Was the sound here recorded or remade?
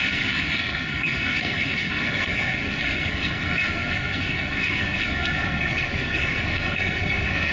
remade